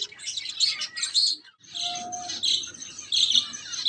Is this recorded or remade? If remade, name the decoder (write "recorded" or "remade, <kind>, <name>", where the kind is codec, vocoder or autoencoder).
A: recorded